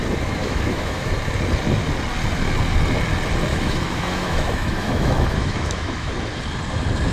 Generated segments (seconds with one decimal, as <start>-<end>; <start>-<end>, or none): 0.4-1.1; 3.5-6.1